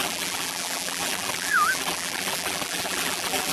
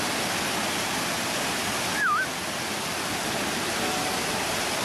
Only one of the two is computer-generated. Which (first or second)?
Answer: first